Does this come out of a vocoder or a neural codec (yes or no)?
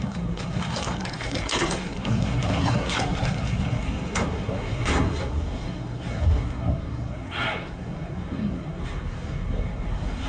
yes